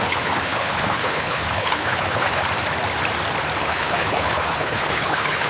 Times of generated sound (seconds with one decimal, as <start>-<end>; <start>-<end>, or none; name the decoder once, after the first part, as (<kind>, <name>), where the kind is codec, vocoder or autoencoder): 0.0-2.4 (codec, HILCodec); 3.6-5.5